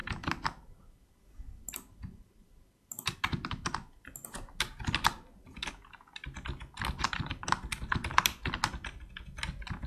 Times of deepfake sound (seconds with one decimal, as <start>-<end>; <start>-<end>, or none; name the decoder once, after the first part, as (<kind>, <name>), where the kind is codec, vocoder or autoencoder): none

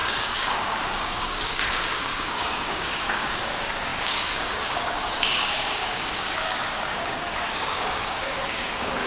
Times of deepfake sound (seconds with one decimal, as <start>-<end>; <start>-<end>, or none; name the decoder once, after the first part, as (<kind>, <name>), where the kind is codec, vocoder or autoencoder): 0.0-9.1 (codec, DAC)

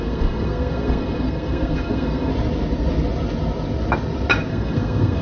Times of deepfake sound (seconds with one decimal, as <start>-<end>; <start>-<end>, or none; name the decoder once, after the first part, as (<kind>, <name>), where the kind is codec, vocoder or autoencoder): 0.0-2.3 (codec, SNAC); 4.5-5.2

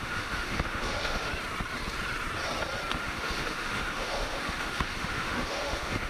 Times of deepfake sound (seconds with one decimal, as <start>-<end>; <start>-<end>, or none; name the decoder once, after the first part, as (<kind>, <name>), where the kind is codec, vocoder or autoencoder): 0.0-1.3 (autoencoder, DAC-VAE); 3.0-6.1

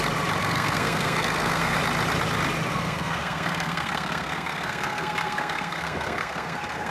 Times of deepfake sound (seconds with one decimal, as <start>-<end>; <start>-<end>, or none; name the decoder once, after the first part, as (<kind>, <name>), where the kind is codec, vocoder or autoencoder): 0.4-1.8 (codec, SNAC); 2.7-6.9